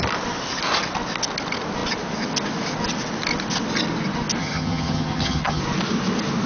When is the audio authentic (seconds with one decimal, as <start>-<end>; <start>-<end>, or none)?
0.0-4.4; 5.6-6.5